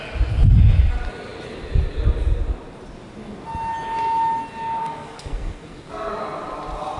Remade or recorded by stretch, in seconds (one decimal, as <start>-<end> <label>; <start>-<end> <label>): 0.0-4.8 recorded; 4.8-6.1 remade; 6.1-7.0 recorded